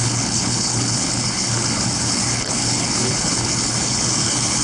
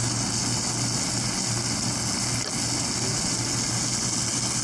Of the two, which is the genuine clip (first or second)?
second